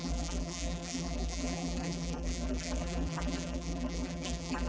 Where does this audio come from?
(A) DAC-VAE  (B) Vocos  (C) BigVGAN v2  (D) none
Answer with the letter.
C